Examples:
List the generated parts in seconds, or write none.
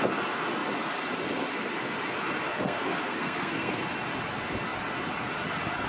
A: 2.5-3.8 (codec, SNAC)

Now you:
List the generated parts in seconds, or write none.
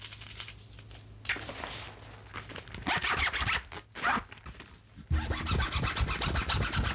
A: none